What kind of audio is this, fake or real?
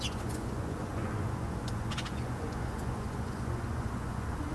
fake